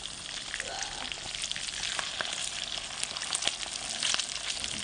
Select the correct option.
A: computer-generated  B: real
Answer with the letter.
B